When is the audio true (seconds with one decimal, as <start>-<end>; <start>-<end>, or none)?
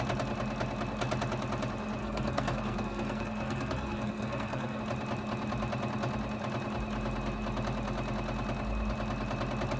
0.0-2.0; 4.8-9.8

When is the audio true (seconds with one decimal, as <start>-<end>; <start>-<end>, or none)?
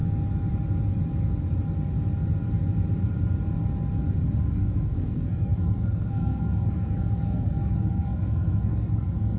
0.0-4.4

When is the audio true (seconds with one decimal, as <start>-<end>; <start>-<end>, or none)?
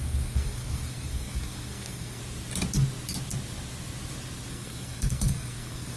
2.2-4.5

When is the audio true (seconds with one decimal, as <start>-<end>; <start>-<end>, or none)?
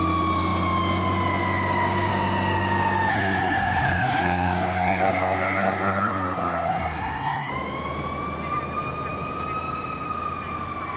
0.0-3.1; 7.5-11.0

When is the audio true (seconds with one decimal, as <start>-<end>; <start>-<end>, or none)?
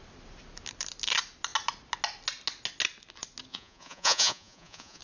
0.0-3.5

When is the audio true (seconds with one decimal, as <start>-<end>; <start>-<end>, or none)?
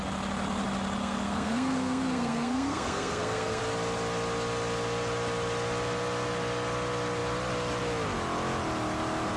0.0-1.0; 3.6-9.4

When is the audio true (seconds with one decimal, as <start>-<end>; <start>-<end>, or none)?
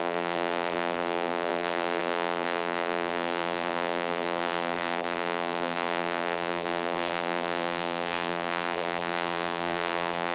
none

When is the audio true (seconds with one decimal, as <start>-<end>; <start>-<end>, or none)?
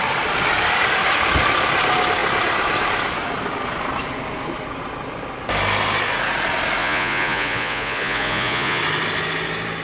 0.0-6.8; 8.8-9.8